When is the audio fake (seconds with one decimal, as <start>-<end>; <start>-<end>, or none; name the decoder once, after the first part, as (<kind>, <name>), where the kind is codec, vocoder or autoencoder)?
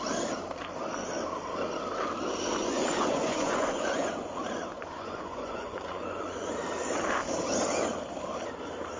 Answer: 2.6-6.5 (vocoder, Vocos)